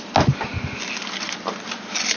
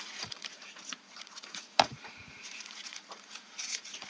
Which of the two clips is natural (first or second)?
first